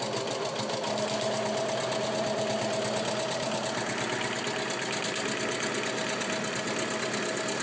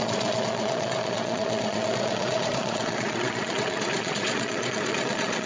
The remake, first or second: second